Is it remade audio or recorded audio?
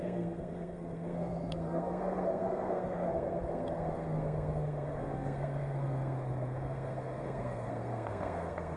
remade